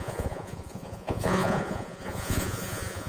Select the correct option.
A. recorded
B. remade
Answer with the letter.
B